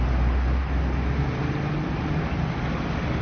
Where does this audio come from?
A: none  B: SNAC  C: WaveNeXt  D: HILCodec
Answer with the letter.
A